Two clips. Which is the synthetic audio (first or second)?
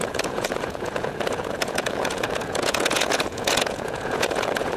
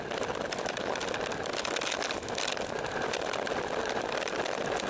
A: first